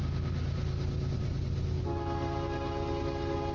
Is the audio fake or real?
real